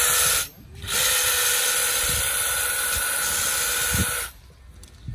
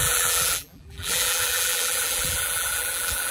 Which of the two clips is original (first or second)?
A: first